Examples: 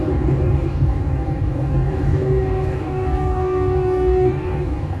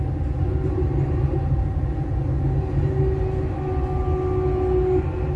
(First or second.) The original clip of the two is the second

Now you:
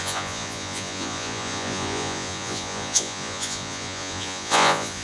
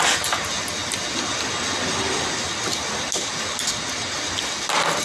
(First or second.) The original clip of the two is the second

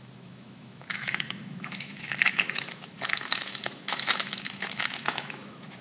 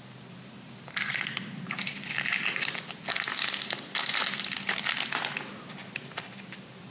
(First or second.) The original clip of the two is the second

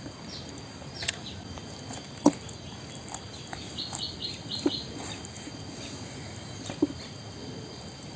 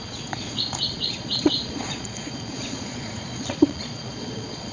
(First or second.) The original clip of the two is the first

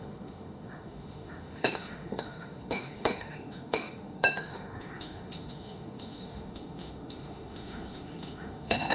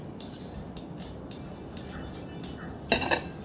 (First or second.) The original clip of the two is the second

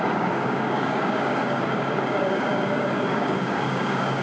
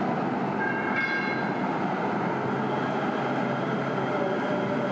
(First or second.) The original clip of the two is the second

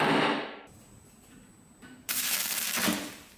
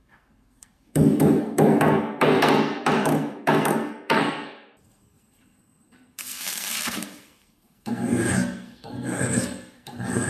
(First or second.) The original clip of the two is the first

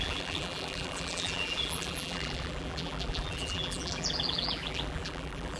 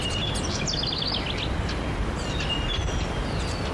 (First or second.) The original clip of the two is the second